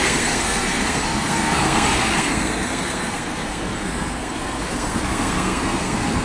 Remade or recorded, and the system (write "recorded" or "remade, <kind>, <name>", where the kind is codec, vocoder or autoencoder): remade, codec, SNAC